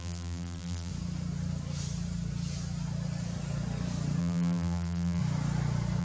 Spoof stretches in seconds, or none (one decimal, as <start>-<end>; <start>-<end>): 0.0-0.9; 4.2-5.2